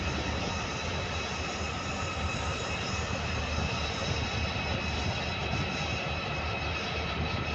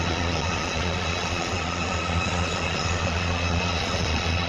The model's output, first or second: second